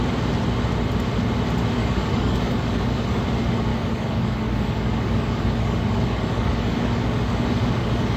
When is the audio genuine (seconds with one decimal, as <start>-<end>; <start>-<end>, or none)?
0.0-1.8; 3.2-3.7